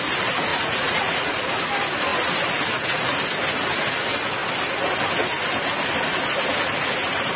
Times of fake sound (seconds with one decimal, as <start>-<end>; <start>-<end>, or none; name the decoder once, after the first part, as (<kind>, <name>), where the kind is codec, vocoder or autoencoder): 0.5-1.3 (vocoder, Vocos)